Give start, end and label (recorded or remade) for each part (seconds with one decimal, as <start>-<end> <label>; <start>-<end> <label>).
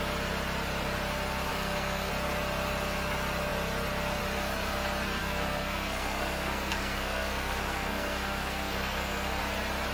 0.0-1.5 recorded; 1.5-2.1 remade; 2.1-5.2 recorded; 5.2-9.4 remade; 9.4-9.9 recorded